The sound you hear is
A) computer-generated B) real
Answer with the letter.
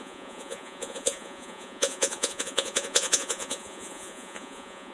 A